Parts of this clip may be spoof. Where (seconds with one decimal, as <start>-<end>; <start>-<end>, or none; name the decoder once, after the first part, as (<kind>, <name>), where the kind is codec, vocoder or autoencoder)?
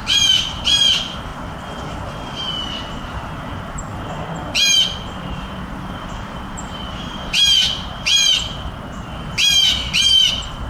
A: 0.0-1.3 (vocoder, BigVGAN v2); 5.2-8.7; 9.9-10.7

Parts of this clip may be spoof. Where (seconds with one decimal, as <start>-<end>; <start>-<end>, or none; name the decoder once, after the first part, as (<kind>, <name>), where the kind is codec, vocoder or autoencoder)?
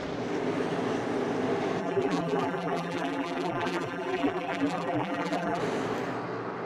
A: 1.8-5.6 (vocoder, BigVGAN v2)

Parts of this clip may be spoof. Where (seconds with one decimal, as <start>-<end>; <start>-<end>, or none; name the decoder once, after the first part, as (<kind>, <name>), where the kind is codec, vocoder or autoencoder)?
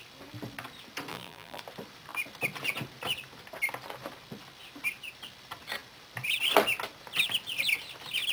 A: 1.1-1.6 (vocoder, BigVGAN v2)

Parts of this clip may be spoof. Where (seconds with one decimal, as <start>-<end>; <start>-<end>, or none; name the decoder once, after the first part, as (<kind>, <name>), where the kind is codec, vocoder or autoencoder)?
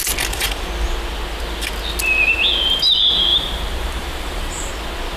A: 3.3-4.7 (vocoder, BigVGAN v2)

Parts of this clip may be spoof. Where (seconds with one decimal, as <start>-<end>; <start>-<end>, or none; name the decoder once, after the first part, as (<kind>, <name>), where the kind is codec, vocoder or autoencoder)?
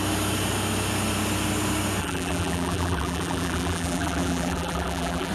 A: 2.0-5.3 (vocoder, BigVGAN v2)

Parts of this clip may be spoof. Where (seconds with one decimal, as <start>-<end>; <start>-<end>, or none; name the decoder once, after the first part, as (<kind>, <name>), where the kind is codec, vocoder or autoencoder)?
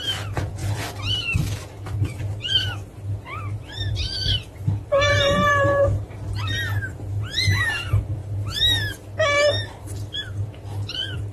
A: 0.0-8.2 (vocoder, BigVGAN v2); 9.5-11.3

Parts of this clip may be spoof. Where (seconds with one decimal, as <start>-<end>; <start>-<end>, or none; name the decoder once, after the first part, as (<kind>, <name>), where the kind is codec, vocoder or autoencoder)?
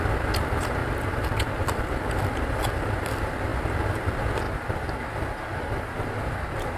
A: 0.8-2.6 (vocoder, BigVGAN v2)